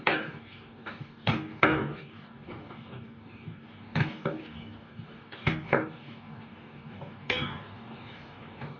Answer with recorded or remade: remade